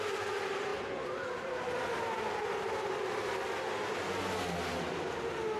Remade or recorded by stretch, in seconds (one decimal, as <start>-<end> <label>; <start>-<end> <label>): 0.0-5.6 recorded